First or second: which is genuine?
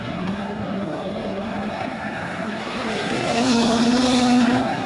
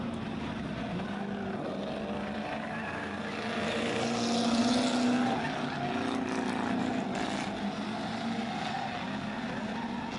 second